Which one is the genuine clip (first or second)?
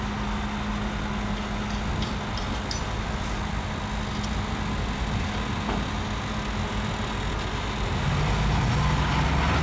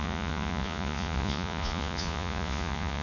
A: first